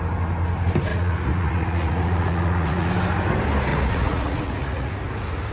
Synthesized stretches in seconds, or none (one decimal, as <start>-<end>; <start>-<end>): 0.9-2.9; 3.7-4.9